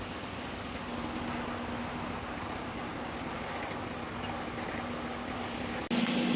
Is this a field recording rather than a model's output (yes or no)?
yes